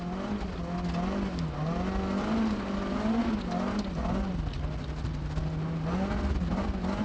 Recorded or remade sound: recorded